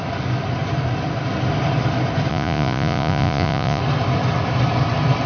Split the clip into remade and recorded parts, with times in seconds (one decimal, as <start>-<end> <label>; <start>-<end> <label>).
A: 0.0-2.3 recorded; 2.3-3.8 remade; 3.8-5.3 recorded